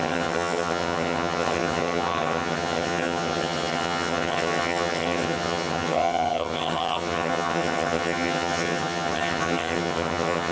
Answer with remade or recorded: remade